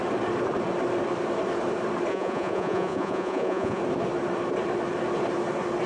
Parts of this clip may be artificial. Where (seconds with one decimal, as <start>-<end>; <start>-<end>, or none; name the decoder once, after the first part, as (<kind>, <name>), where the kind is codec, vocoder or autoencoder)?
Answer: 2.1-3.8 (vocoder, Vocos)